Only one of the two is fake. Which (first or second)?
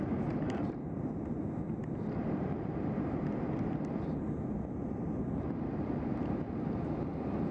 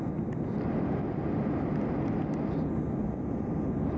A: first